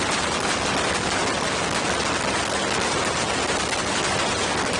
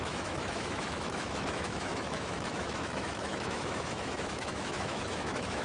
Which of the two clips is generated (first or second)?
second